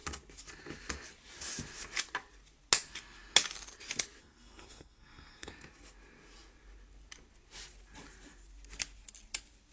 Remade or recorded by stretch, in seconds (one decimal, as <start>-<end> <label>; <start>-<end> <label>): 0.0-4.2 recorded; 4.2-5.5 remade; 5.5-9.7 recorded